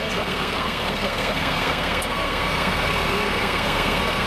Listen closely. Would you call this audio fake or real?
fake